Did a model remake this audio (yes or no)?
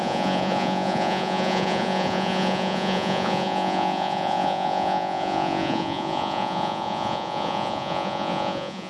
yes